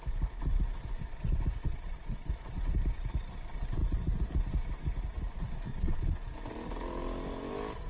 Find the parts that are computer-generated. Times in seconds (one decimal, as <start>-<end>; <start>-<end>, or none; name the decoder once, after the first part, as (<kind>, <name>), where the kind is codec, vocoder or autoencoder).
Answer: 1.6-2.3 (vocoder, Vocos); 5.7-6.2